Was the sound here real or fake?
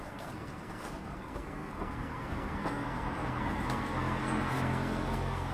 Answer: fake